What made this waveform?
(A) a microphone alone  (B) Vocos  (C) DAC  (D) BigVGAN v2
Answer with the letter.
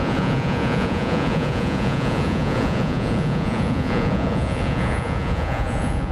B